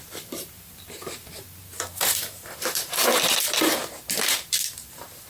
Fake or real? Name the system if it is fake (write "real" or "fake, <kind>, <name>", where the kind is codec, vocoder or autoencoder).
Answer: fake, vocoder, BigVGAN v2